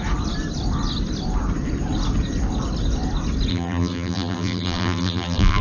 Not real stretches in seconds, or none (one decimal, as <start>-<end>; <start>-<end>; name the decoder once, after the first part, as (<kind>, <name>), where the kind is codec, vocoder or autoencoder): 3.5-5.6 (vocoder, BigVGAN v2)